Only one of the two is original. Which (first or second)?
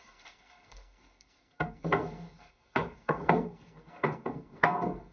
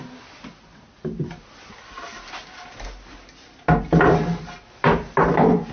second